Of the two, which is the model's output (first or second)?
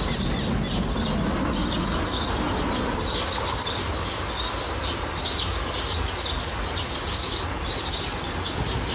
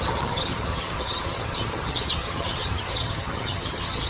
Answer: second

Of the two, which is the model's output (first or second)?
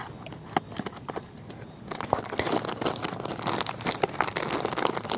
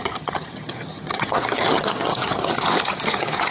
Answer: second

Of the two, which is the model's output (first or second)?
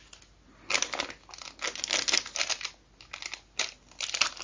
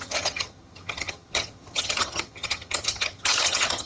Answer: second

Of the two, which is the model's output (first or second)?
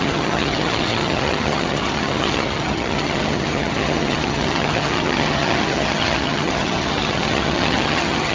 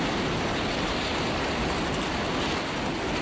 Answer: first